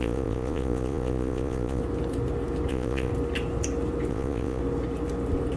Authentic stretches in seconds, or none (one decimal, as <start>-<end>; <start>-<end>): 1.8-2.7; 3.1-4.1; 4.6-5.6